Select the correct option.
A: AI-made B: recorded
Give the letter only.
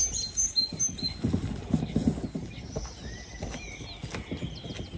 B